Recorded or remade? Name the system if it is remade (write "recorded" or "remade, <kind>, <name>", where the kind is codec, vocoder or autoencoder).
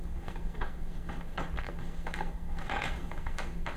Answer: remade, codec, SNAC